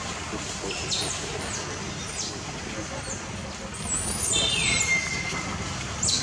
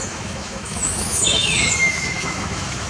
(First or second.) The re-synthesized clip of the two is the second